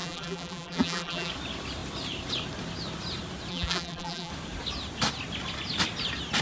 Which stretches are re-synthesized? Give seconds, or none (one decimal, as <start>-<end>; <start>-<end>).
0.0-1.3; 3.5-4.3